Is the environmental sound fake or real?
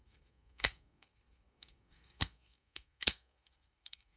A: fake